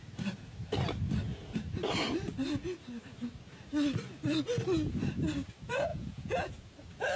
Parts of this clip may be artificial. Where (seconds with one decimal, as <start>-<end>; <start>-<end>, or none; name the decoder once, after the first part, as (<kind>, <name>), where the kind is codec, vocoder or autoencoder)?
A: 5.9-6.5 (vocoder, Vocos)